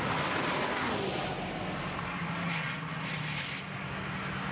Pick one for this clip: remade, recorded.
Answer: recorded